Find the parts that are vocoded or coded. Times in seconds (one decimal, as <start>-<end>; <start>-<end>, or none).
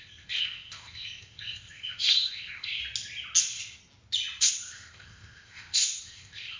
0.0-2.8; 3.4-3.8; 4.4-6.6